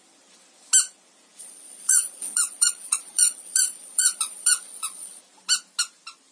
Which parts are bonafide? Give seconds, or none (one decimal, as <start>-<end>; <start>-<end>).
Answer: 0.0-1.4; 5.2-6.3

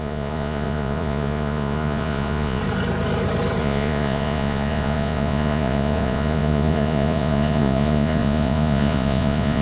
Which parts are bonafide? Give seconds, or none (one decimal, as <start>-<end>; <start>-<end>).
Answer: 2.6-3.6

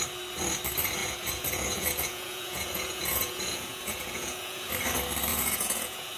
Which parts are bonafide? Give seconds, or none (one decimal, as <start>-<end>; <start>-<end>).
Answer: 0.0-1.0; 4.7-5.3